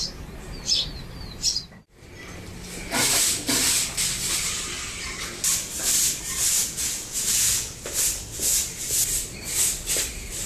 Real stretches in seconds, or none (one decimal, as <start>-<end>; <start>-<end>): 0.0-6.6; 7.8-10.5